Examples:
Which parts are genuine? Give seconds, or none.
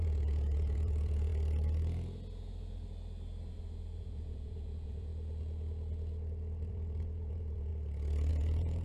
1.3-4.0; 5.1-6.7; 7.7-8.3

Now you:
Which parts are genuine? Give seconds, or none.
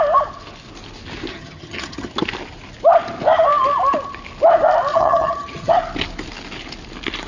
0.0-1.3; 2.1-4.9; 5.7-7.3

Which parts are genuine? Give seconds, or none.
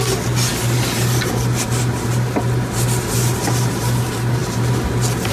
0.0-5.3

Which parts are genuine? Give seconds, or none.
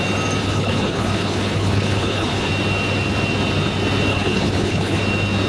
0.0-0.4; 2.5-4.1; 5.0-5.5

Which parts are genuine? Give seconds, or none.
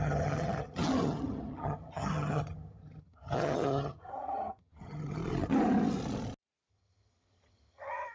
5.2-6.7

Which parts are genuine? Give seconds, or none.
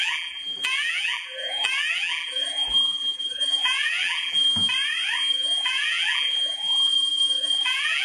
4.5-5.3